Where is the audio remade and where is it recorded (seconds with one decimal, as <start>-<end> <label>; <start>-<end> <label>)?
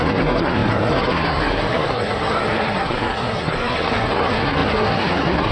0.0-5.5 remade